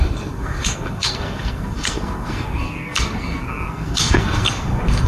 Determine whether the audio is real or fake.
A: fake